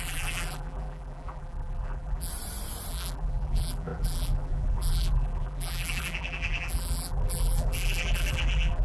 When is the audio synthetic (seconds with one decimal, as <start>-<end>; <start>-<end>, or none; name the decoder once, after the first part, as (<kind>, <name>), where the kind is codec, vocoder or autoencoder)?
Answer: 0.0-2.3 (vocoder, BigVGAN v2); 2.9-8.8